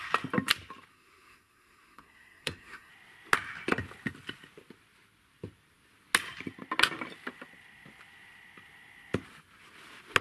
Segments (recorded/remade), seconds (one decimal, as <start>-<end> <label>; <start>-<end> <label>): 0.0-0.9 recorded; 0.9-2.9 remade; 2.9-10.2 recorded